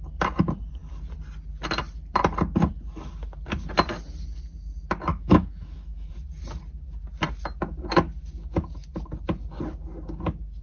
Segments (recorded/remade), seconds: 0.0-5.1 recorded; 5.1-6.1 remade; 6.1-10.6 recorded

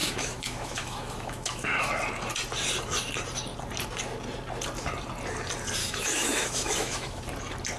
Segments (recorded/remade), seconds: 0.0-1.9 remade; 1.9-5.8 recorded; 5.8-7.2 remade; 7.2-7.8 recorded

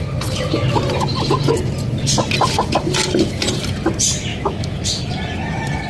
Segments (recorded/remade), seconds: 0.0-4.3 recorded; 4.3-5.0 remade; 5.0-5.9 recorded

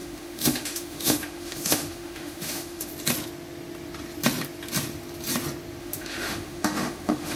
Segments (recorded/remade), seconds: 0.0-2.9 remade; 2.9-5.8 recorded; 5.8-7.4 remade

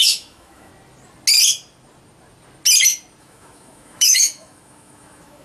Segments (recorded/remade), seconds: 0.0-0.7 remade; 0.7-3.2 recorded; 3.2-5.4 remade

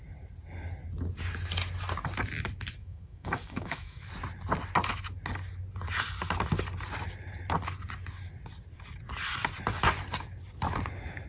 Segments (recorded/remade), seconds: 0.0-2.8 recorded; 2.8-4.1 remade; 4.1-11.3 recorded